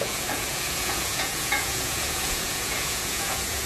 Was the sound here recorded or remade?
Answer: remade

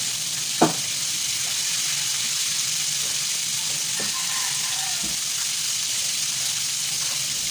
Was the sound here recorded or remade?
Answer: remade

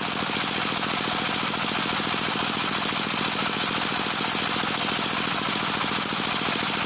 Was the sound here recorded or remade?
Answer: recorded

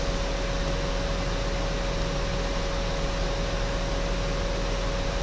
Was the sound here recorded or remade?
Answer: recorded